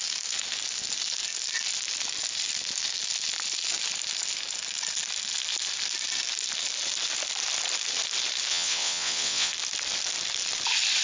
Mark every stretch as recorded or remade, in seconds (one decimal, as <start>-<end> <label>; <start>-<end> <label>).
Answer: 0.0-8.5 recorded; 8.5-9.5 remade; 9.5-11.0 recorded